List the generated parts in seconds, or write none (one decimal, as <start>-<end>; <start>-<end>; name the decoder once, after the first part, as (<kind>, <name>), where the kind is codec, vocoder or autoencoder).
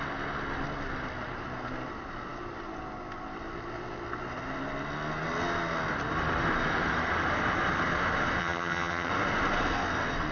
8.4-9.1 (vocoder, HiFi-GAN)